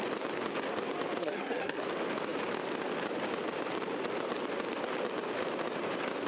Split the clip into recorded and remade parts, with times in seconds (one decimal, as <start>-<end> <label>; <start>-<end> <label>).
0.0-1.2 recorded; 1.2-1.8 remade; 1.8-6.3 recorded